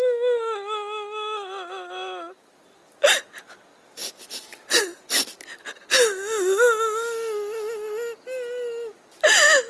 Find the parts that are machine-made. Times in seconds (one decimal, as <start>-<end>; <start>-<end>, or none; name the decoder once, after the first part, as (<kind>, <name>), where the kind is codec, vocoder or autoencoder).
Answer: none